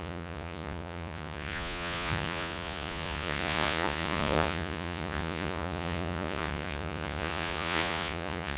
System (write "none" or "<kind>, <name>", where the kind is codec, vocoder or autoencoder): vocoder, Vocos